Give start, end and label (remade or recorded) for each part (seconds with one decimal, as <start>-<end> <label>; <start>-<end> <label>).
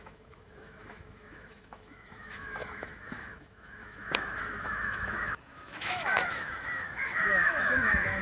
0.0-8.2 remade